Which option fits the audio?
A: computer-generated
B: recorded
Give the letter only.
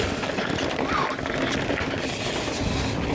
B